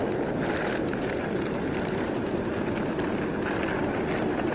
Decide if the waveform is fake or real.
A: real